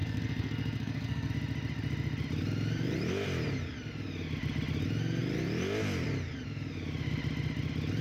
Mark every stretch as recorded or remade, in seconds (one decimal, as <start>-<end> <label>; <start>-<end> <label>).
0.0-1.3 remade; 1.3-8.0 recorded